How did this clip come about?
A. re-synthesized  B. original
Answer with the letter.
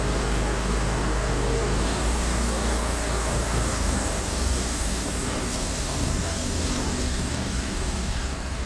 A